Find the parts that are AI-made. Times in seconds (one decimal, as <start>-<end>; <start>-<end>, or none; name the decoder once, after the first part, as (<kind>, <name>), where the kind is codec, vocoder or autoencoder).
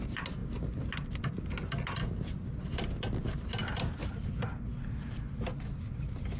none